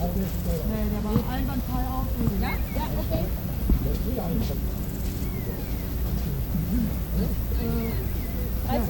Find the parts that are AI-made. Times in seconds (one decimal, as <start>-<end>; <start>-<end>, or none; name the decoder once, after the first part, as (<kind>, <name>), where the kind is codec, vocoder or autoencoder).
3.9-4.5 (vocoder, BigVGAN v2)